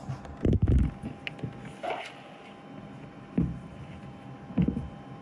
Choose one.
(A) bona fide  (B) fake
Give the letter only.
A